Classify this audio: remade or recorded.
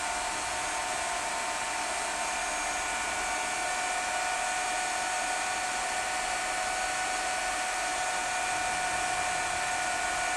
recorded